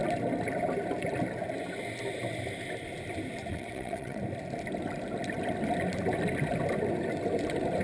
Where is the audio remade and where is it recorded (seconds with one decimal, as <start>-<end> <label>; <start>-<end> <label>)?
0.0-3.5 recorded; 3.5-4.2 remade; 4.2-7.8 recorded

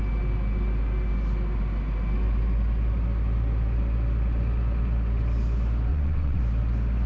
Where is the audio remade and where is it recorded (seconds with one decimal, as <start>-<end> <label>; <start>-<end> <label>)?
0.0-5.9 recorded; 5.9-6.4 remade; 6.4-7.1 recorded

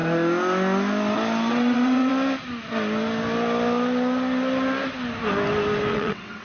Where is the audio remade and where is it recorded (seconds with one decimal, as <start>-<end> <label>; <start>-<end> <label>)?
0.0-1.5 recorded; 1.5-2.1 remade; 2.1-5.9 recorded; 5.9-6.4 remade

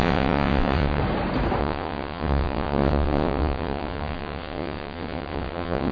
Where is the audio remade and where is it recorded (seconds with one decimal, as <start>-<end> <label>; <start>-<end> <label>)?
0.0-1.0 remade; 1.0-1.6 recorded; 1.6-5.9 remade

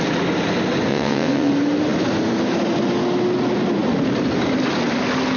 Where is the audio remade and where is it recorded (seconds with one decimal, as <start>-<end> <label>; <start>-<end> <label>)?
0.0-0.9 recorded; 0.9-1.5 remade; 1.5-5.4 recorded

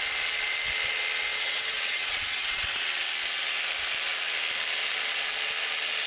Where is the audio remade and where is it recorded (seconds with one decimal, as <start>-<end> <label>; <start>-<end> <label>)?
0.0-1.3 recorded; 1.3-2.8 remade; 2.8-6.1 recorded

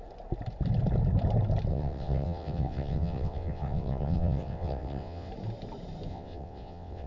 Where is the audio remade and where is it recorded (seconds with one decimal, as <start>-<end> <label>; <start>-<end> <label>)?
0.0-1.7 recorded; 1.7-5.3 remade; 5.3-6.1 recorded; 6.1-7.1 remade

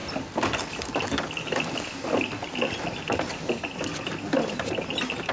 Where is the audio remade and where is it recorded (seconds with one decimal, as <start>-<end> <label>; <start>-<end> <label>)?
0.0-5.3 recorded